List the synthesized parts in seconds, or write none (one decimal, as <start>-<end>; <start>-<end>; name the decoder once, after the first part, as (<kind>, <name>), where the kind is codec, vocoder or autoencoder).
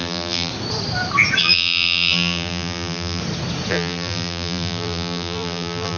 0.0-0.5 (vocoder, BigVGAN v2); 1.4-3.2; 3.7-6.0